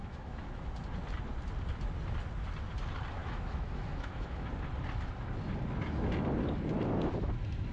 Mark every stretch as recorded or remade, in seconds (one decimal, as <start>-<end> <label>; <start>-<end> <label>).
0.0-0.7 remade; 0.7-3.2 recorded; 3.2-4.5 remade; 4.5-7.7 recorded

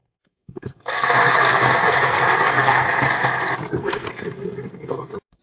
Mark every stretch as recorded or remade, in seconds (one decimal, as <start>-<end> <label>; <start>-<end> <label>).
0.0-3.2 remade; 3.2-3.8 recorded; 3.8-5.4 remade

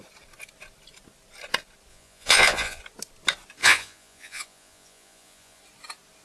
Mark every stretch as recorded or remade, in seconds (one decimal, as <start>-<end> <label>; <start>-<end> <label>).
0.0-1.9 recorded; 1.9-2.8 remade; 2.8-3.6 recorded; 3.6-5.6 remade; 5.6-6.2 recorded